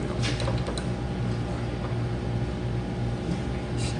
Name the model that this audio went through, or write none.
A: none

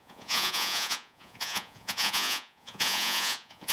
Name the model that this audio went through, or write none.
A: vocoder, Vocos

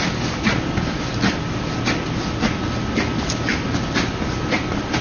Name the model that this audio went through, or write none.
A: none